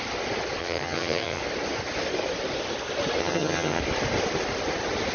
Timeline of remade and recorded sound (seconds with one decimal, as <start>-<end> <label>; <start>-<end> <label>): 0.0-0.6 recorded; 0.6-1.4 remade; 1.4-3.2 recorded; 3.2-3.8 remade; 3.8-5.1 recorded